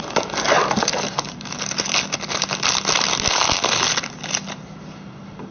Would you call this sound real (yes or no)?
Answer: yes